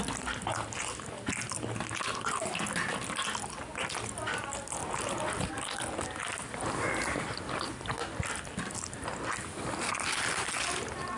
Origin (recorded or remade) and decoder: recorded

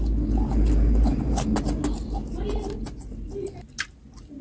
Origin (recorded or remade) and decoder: recorded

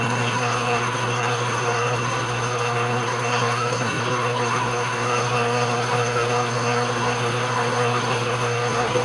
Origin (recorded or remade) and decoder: remade, codec, SNAC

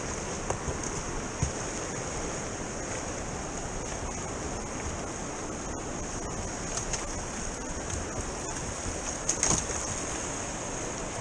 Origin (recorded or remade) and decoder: recorded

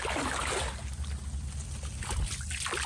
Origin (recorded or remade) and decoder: recorded